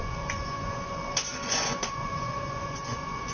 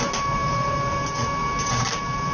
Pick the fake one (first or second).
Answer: first